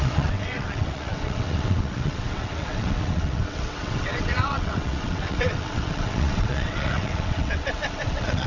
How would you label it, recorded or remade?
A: remade